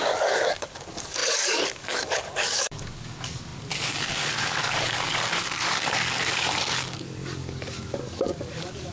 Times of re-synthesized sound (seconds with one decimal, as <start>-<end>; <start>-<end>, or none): 0.0-8.9